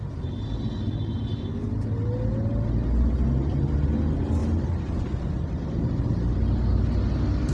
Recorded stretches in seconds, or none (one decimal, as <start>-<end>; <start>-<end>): 0.0-7.5